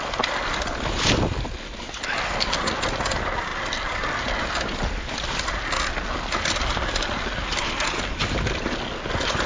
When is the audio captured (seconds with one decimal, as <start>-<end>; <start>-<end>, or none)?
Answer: 0.0-9.5